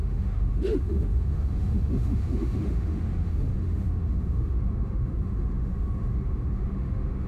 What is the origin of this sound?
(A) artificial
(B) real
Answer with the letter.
A